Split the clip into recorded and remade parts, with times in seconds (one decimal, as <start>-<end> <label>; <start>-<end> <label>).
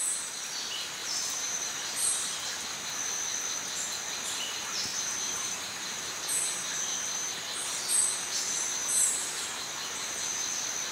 0.0-1.0 recorded; 1.0-1.9 remade; 1.9-4.9 recorded; 4.9-7.4 remade; 7.4-8.8 recorded; 8.8-9.5 remade; 9.5-10.9 recorded